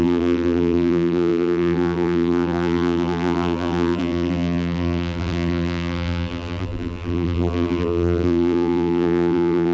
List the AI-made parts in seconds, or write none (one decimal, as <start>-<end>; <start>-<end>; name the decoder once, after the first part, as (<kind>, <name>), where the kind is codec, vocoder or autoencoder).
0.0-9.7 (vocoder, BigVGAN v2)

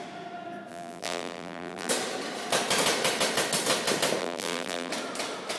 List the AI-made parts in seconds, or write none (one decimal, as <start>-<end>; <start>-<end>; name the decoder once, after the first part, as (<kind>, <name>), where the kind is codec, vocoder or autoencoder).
0.7-1.9 (vocoder, BigVGAN v2); 4.2-4.9

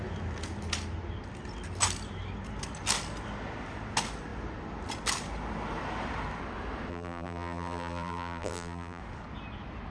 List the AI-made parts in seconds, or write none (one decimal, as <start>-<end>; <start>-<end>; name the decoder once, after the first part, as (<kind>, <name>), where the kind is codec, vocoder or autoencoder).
6.9-9.0 (vocoder, BigVGAN v2)